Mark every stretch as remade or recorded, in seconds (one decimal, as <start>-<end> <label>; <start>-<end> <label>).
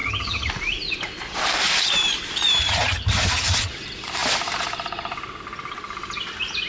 0.0-0.5 remade; 0.5-2.6 recorded; 2.6-3.7 remade; 3.7-6.7 recorded